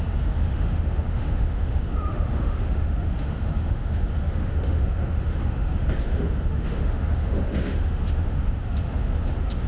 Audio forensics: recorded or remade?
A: remade